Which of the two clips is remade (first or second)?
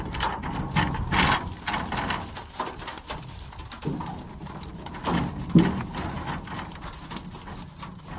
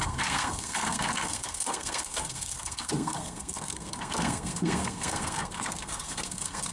second